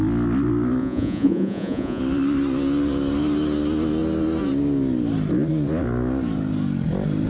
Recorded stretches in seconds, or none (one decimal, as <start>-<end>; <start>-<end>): 0.0-0.8; 2.0-7.3